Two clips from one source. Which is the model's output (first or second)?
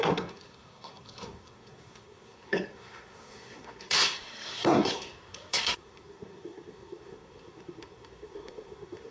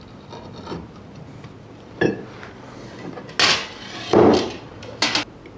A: first